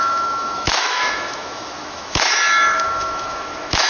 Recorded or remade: remade